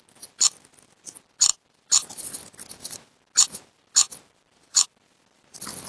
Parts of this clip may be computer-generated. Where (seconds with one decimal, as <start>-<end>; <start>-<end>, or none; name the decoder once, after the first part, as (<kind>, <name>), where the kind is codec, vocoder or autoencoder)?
none